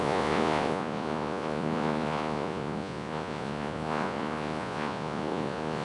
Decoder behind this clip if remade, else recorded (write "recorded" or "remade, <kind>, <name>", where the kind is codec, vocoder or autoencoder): remade, vocoder, Vocos